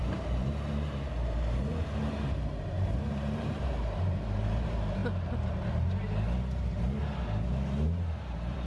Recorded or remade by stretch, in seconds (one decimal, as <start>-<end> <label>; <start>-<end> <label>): 0.0-5.0 remade; 5.0-8.2 recorded; 8.2-8.7 remade